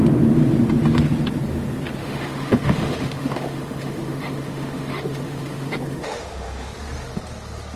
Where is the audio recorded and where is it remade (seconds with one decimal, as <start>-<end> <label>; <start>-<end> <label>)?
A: 0.0-2.0 recorded; 2.0-6.7 remade; 6.7-7.8 recorded